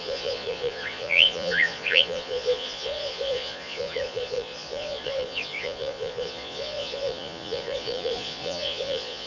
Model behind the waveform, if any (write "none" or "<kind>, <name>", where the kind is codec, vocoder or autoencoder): vocoder, Vocos